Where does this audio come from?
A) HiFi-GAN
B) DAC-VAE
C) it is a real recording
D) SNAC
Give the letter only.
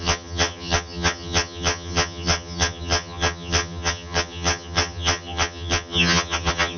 A